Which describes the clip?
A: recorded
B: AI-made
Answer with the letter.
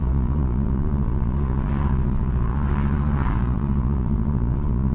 B